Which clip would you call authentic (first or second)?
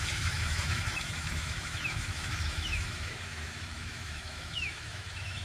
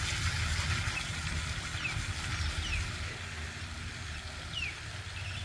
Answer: second